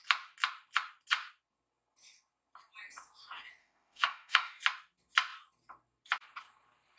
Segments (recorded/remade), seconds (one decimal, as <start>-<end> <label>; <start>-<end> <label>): 0.0-3.6 recorded; 3.6-4.6 remade; 4.6-7.0 recorded